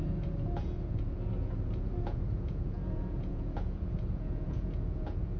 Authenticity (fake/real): fake